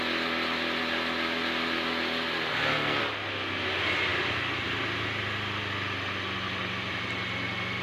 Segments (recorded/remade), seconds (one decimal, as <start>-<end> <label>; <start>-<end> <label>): 0.0-2.5 recorded; 2.5-3.0 remade; 3.0-7.8 recorded